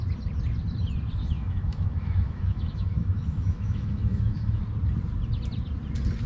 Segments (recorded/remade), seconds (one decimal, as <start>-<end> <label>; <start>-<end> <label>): 0.0-1.2 recorded; 1.2-4.6 remade; 4.6-6.3 recorded